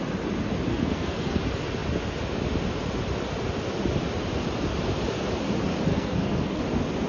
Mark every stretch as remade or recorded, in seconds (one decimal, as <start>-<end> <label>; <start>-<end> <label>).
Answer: 0.0-0.7 recorded; 0.7-1.4 remade; 1.4-5.9 recorded; 5.9-6.6 remade; 6.6-7.1 recorded